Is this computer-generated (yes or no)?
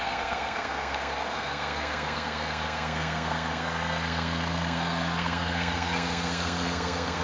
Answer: yes